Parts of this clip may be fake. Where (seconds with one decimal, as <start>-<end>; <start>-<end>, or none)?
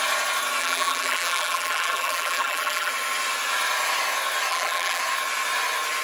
0.6-2.9; 4.5-5.0